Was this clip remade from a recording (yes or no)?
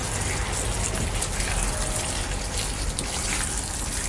no